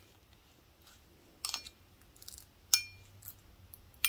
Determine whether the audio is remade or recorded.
recorded